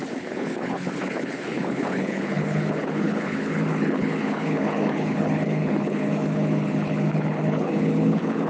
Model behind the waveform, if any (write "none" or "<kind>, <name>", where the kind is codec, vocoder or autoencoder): codec, HILCodec